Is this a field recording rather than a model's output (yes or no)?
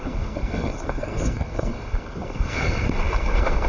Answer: no